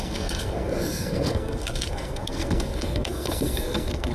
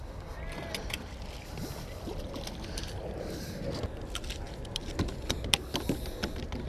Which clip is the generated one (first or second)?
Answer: first